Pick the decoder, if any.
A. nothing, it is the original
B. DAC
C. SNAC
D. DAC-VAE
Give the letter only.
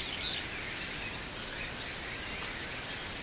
A